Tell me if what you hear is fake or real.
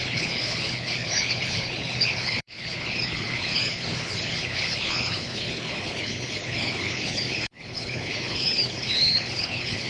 fake